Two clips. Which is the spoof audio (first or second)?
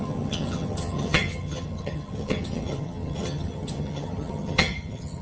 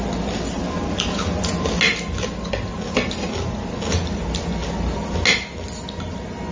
first